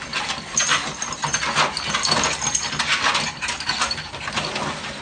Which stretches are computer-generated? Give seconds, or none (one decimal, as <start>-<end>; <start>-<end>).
none